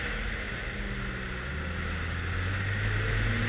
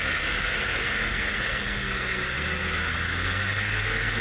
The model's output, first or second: second